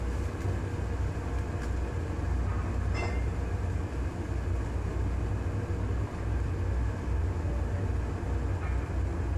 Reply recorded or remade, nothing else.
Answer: recorded